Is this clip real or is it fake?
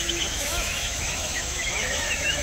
fake